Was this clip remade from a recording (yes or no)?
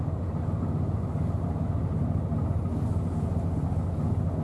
no